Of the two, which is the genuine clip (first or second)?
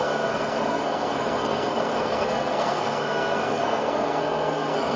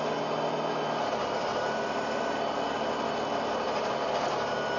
second